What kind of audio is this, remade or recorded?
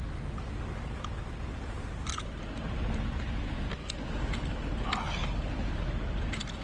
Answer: recorded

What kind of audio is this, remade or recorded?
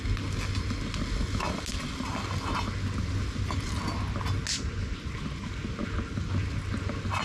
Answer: recorded